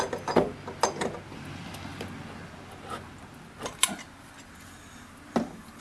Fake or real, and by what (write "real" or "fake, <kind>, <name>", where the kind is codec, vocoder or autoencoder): real